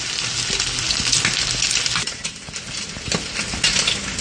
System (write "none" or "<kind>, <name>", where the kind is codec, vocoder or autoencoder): none